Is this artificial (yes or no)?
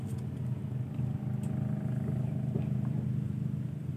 no